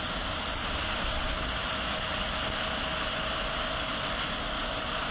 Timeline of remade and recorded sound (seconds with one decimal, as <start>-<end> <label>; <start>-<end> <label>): 0.0-5.1 recorded